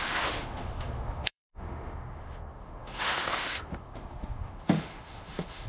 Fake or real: fake